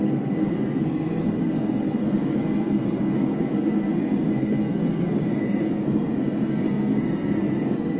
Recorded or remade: remade